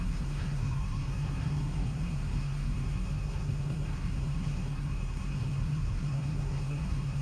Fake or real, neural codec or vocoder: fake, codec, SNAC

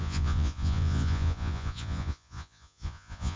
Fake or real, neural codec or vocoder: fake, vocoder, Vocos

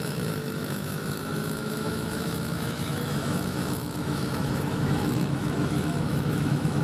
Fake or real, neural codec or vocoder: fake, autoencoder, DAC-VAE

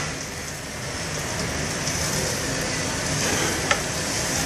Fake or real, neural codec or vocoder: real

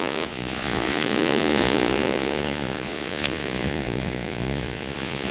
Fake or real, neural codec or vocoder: fake, vocoder, Vocos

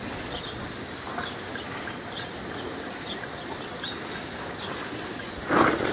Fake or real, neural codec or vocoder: real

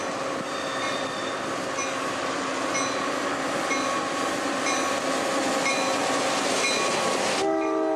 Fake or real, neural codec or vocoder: real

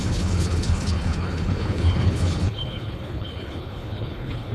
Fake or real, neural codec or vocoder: fake, codec, HILCodec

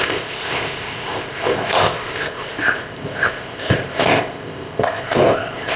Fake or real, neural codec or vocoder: fake, codec, ZipCodec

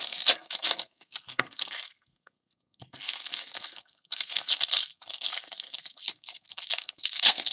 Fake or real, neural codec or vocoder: fake, codec, SNAC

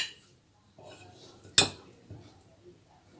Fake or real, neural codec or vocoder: real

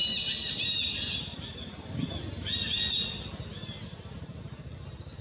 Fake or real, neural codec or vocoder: real